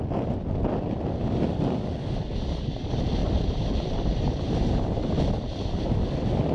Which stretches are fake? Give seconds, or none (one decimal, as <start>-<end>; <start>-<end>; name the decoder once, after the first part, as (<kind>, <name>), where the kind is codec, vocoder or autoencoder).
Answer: 3.2-5.2 (vocoder, BigVGAN v2)